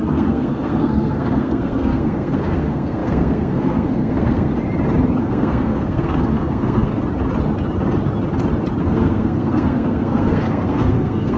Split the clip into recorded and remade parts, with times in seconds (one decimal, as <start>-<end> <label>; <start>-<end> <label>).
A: 0.0-4.5 remade; 4.5-5.2 recorded; 5.2-6.9 remade; 6.9-8.8 recorded; 8.8-11.4 remade